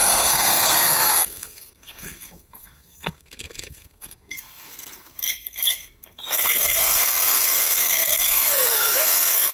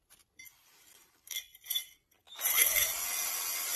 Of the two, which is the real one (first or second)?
second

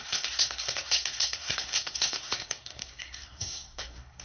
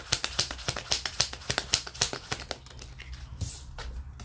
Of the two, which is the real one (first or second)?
second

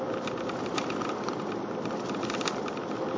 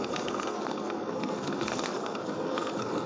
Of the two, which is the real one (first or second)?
first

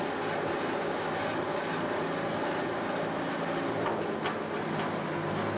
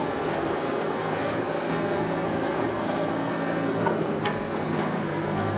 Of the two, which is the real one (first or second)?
first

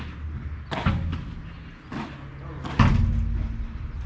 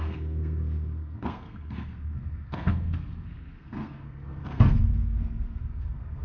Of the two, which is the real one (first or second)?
first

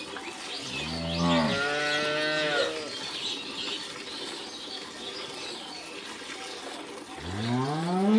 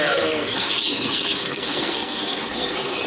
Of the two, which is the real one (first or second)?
first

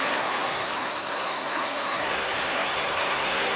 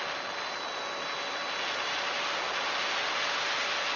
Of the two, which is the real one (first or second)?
second